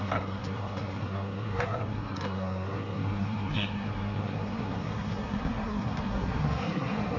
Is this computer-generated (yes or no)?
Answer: yes